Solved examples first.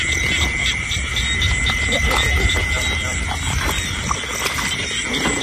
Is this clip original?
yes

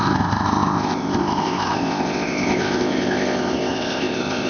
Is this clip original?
no